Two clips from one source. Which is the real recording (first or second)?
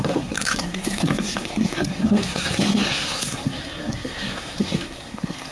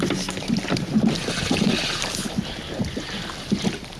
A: second